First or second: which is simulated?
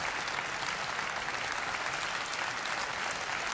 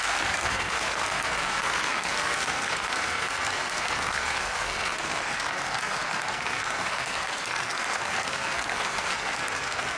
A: second